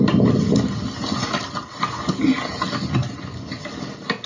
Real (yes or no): yes